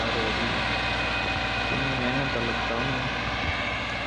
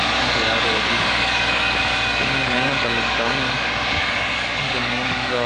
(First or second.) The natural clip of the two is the first